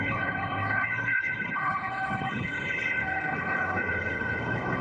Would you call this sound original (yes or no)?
no